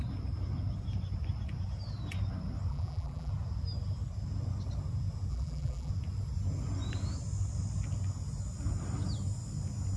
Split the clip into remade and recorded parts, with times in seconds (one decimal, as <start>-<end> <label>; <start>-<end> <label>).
0.0-2.7 recorded; 2.7-3.3 remade; 3.3-5.3 recorded; 5.3-5.9 remade; 5.9-10.0 recorded